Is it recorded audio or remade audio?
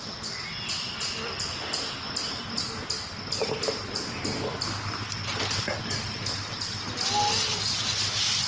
recorded